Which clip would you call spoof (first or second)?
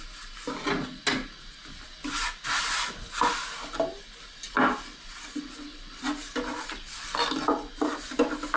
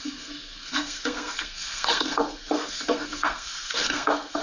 second